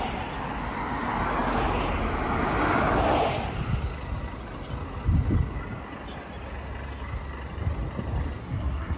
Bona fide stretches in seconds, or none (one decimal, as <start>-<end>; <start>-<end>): 0.0-8.4